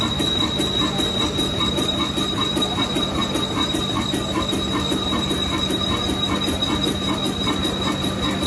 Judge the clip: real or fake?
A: real